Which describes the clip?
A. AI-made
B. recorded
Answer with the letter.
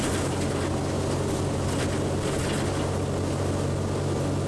B